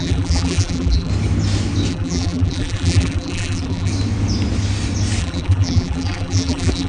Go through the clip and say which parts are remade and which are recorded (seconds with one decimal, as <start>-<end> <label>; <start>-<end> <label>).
0.0-1.1 remade; 1.1-1.9 recorded; 1.9-3.9 remade; 3.9-5.2 recorded; 5.2-6.9 remade